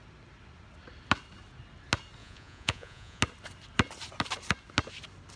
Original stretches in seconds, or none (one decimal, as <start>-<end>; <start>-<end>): 0.0-2.2; 3.2-5.4